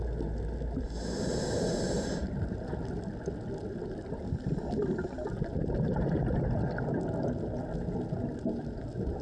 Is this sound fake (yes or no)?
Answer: no